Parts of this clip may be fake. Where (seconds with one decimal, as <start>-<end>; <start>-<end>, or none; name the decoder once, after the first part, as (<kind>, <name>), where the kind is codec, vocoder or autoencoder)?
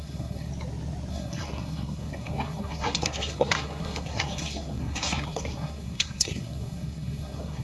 0.0-0.5 (codec, SNAC); 1.1-7.6